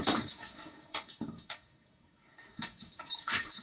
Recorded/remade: remade